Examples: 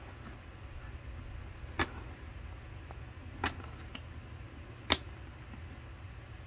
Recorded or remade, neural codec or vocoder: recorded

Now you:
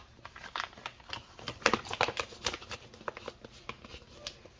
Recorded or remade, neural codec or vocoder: recorded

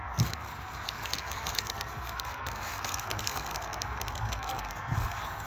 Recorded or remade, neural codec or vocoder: remade, codec, SNAC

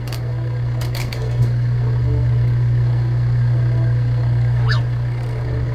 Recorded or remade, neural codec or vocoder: remade, codec, SNAC